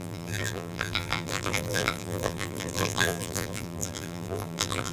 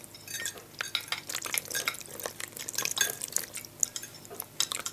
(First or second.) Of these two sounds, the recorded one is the second